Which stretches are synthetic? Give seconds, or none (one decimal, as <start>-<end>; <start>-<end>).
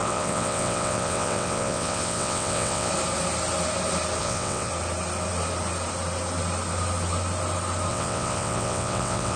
0.0-2.9; 4.2-4.7; 7.9-9.4